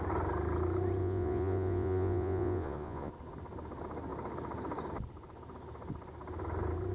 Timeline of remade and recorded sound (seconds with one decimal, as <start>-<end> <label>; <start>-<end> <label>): 0.0-1.0 recorded; 1.0-3.1 remade; 3.1-6.9 recorded

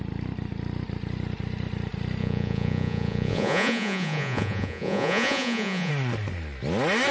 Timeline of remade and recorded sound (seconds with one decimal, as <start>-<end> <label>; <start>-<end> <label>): 0.0-2.2 recorded; 2.2-5.9 remade; 5.9-7.1 recorded

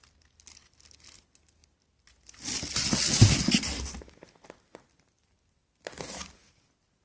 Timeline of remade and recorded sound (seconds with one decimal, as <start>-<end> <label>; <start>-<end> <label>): 0.0-7.0 recorded

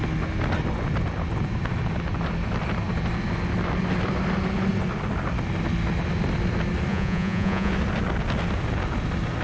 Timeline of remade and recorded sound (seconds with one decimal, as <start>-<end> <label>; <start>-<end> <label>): 0.0-6.9 recorded; 6.9-7.7 remade; 7.7-9.4 recorded